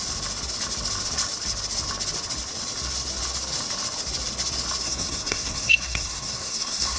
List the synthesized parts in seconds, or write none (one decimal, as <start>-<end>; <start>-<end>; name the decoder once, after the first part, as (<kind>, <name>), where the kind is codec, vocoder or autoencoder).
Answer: 4.8-7.0 (codec, SNAC)